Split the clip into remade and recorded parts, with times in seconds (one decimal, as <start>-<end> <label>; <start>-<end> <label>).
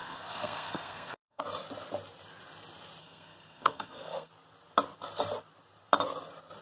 0.0-1.4 remade; 1.4-3.0 recorded; 3.0-4.3 remade; 4.3-6.6 recorded